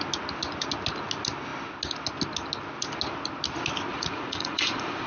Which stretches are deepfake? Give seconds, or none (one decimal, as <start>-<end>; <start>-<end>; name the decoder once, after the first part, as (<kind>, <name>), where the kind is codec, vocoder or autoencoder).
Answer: 3.9-5.1 (vocoder, Vocos)